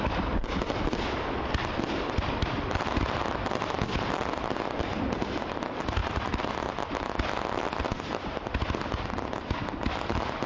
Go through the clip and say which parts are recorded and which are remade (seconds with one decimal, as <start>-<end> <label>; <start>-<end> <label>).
0.0-6.0 recorded; 6.0-6.5 remade; 6.5-10.5 recorded